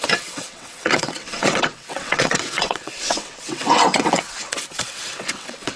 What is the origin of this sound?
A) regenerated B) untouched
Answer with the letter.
A